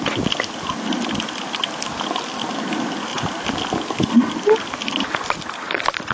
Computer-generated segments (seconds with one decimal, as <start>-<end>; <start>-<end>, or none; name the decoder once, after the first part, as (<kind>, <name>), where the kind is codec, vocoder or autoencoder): none